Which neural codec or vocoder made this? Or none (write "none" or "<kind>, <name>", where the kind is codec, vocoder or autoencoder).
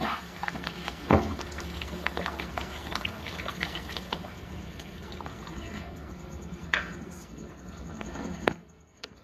codec, SNAC